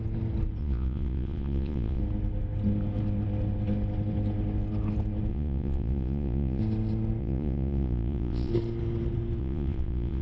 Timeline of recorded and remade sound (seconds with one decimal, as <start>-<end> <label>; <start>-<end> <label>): 0.0-0.6 recorded; 0.6-2.0 remade; 2.0-5.3 recorded; 5.3-6.6 remade; 6.6-7.2 recorded; 7.2-8.5 remade; 8.5-9.4 recorded; 9.4-10.2 remade